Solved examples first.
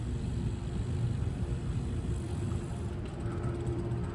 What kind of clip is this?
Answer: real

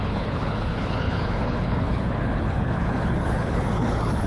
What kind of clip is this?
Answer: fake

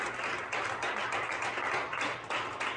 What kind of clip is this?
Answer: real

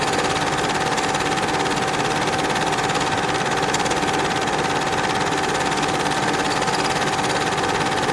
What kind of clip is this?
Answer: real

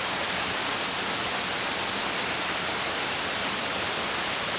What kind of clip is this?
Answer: real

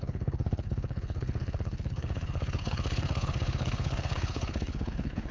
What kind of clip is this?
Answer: fake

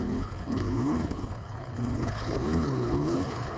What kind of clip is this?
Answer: fake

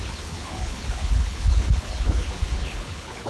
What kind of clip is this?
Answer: fake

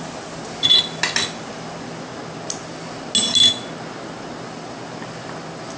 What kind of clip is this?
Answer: real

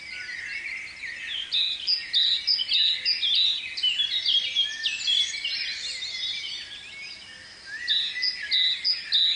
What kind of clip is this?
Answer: real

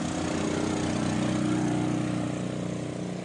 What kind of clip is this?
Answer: real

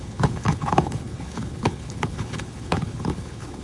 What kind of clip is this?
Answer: fake